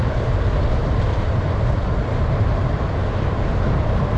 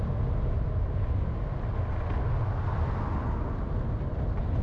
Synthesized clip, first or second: first